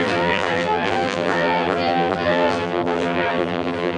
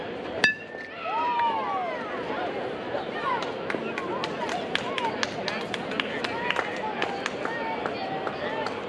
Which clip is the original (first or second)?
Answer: second